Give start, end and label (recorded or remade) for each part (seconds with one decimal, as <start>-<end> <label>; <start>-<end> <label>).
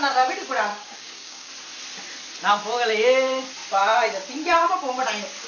0.0-0.7 recorded; 0.7-1.5 remade; 1.5-5.5 recorded